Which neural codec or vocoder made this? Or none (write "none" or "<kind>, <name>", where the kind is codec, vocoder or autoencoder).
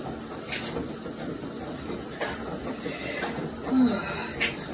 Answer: none